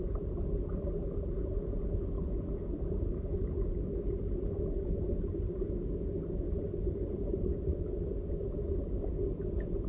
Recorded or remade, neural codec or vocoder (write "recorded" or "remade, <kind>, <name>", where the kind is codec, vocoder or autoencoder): recorded